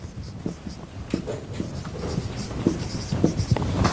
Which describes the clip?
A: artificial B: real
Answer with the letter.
A